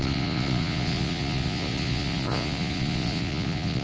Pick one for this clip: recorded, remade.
remade